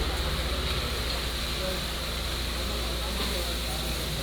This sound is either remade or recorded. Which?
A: recorded